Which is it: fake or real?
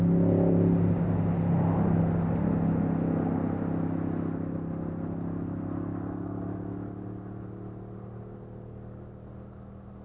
real